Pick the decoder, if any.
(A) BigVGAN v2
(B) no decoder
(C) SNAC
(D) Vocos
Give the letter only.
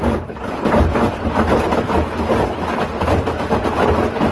B